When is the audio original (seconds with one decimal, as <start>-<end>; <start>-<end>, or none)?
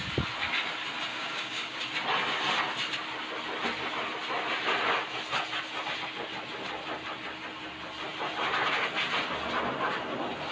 0.0-1.1; 1.8-10.5